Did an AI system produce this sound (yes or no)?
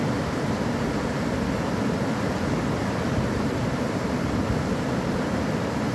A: no